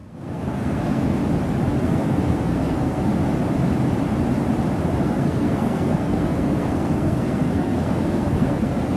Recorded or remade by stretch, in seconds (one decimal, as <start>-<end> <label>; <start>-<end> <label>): 0.0-1.2 remade; 1.2-1.8 recorded; 1.8-3.1 remade; 3.1-5.0 recorded; 5.0-9.0 remade